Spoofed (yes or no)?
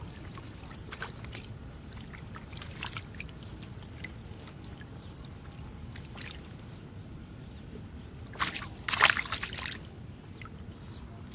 no